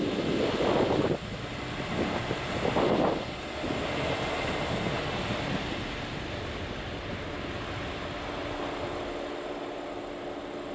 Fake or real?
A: real